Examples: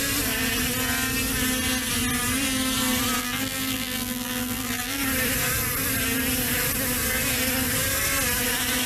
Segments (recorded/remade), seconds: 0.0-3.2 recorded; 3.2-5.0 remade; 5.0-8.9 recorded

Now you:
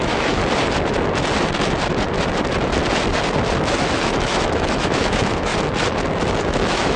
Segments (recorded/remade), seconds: 0.0-0.4 remade; 0.4-4.0 recorded; 4.0-5.5 remade; 5.5-6.3 recorded; 6.3-7.0 remade

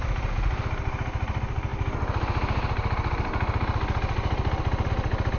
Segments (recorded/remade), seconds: 0.0-5.4 recorded

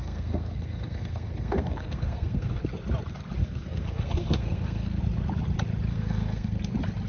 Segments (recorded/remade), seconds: 0.0-2.6 remade; 2.6-3.4 recorded; 3.4-5.0 remade; 5.0-5.9 recorded; 5.9-6.6 remade; 6.6-7.1 recorded

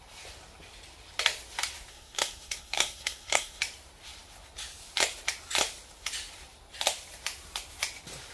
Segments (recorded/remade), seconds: 0.0-1.9 recorded; 1.9-3.6 remade; 3.6-8.3 recorded

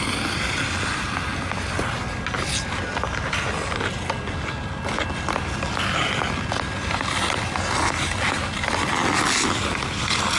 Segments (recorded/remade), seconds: 0.0-10.4 recorded

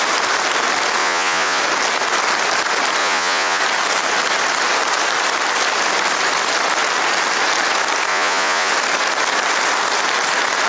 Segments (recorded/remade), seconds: 0.0-1.0 recorded; 1.0-1.6 remade; 1.6-3.0 recorded; 3.0-3.6 remade; 3.6-8.1 recorded; 8.1-8.7 remade; 8.7-10.7 recorded

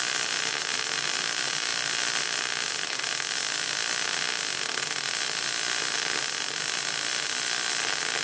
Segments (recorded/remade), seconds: 0.0-8.2 recorded